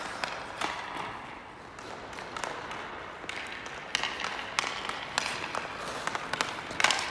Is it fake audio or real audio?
real